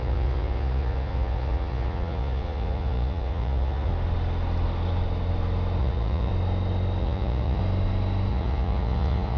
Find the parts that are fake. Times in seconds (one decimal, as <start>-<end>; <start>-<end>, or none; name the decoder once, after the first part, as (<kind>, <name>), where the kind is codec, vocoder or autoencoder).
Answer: 0.0-3.9 (vocoder, Vocos); 5.8-6.3; 7.0-7.6; 8.3-9.4